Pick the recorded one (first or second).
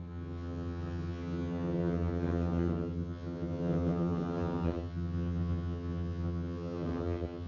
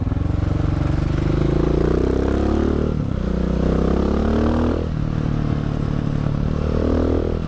second